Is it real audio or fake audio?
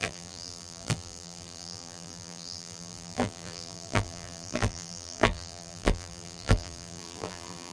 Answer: fake